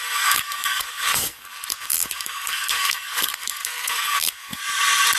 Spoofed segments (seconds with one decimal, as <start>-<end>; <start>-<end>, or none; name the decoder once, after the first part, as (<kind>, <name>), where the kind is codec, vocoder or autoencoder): 0.0-4.6 (codec, SNAC)